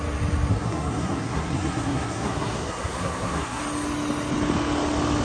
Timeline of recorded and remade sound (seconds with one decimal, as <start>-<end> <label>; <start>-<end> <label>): 0.0-0.5 recorded; 0.5-3.6 remade; 3.6-5.2 recorded